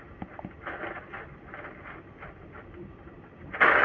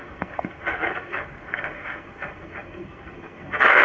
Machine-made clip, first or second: second